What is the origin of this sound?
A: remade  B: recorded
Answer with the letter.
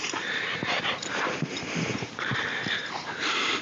A